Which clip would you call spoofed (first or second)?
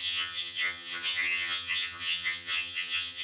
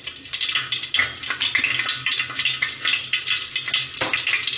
first